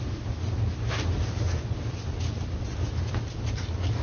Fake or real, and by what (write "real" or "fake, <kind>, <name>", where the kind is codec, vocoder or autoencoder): real